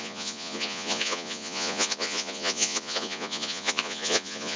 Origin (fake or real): fake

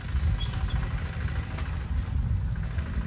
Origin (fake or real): real